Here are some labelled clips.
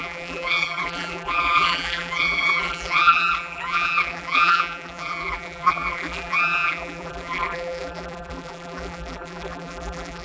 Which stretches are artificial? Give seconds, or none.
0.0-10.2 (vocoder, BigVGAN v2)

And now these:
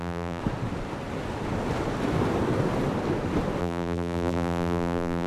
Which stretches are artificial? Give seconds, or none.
0.0-0.4 (vocoder, BigVGAN v2); 3.6-5.3

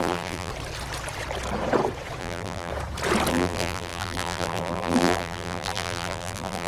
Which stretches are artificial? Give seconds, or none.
0.0-0.5 (vocoder, BigVGAN v2); 2.2-2.7; 3.3-6.7

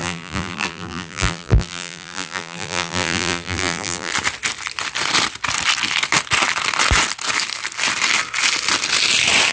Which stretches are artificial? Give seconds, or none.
0.0-4.1 (vocoder, BigVGAN v2)

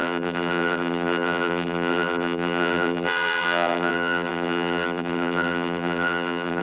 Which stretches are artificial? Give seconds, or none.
0.0-6.6 (vocoder, BigVGAN v2)